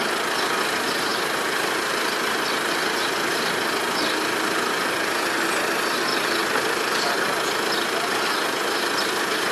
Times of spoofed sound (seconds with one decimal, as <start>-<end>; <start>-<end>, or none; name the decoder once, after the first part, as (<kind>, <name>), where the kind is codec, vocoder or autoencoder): 1.1-2.7 (vocoder, BigVGAN v2); 6.1-7.4